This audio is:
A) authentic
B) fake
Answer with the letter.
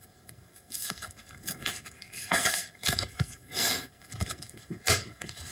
B